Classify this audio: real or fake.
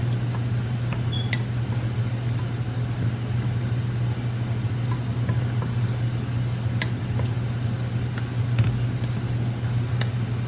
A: real